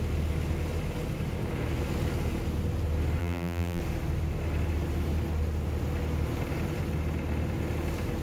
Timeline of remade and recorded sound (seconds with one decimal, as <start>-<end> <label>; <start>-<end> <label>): 0.0-3.2 recorded; 3.2-3.8 remade; 3.8-8.2 recorded